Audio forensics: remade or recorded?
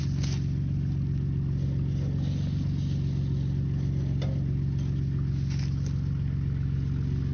recorded